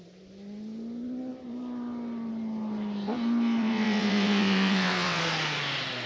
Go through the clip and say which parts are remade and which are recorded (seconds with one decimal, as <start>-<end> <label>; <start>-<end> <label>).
0.0-3.6 recorded; 3.6-5.2 remade; 5.2-6.1 recorded